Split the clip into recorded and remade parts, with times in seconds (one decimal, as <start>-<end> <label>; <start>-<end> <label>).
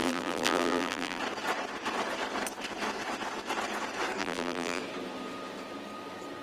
0.0-1.2 remade; 1.2-4.2 recorded; 4.2-4.8 remade; 4.8-6.4 recorded